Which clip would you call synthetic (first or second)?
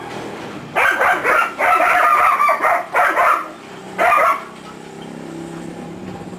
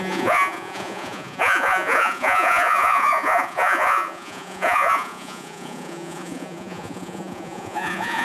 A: second